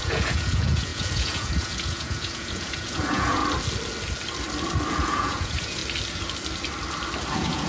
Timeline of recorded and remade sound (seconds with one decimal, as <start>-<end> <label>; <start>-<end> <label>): 0.0-3.4 remade; 3.4-4.9 recorded; 4.9-5.8 remade; 5.8-7.3 recorded; 7.3-7.7 remade

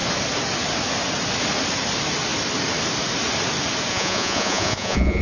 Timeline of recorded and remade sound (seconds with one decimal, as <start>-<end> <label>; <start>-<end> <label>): 0.0-3.9 recorded; 3.9-5.2 remade